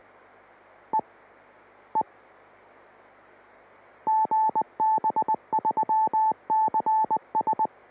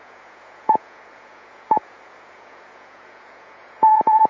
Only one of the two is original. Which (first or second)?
first